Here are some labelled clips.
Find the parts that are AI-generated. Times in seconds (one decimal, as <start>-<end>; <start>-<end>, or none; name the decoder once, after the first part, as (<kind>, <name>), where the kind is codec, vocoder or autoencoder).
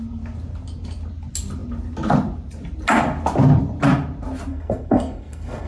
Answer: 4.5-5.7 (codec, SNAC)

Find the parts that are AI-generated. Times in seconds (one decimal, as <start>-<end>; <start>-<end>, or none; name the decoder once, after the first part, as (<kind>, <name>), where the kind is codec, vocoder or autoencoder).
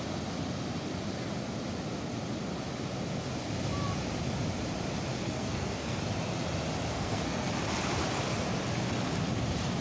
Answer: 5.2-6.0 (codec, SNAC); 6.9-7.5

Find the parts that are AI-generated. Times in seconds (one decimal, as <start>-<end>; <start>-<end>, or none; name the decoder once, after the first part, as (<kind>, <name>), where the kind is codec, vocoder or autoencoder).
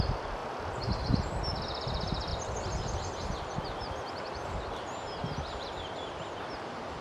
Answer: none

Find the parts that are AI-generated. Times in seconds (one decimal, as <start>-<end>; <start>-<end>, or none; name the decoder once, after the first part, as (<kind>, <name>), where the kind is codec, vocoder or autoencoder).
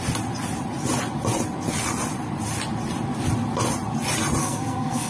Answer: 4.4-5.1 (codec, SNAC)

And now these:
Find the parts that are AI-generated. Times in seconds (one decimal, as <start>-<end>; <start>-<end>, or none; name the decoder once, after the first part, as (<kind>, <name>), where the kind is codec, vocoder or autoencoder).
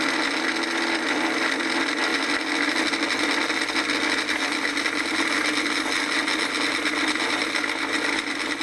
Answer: none